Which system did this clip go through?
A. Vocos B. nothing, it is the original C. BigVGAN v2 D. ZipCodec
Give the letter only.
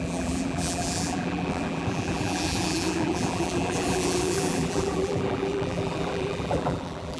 C